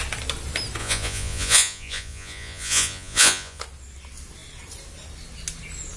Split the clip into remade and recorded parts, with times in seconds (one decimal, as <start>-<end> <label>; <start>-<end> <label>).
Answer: 0.0-0.8 recorded; 0.8-3.6 remade; 3.6-6.0 recorded